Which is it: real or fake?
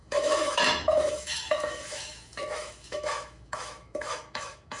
fake